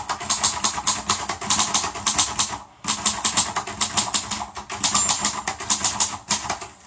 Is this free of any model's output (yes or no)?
yes